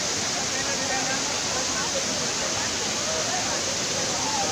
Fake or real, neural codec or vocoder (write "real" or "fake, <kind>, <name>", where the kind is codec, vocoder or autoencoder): real